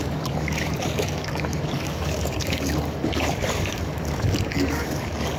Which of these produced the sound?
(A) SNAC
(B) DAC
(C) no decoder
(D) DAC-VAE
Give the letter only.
B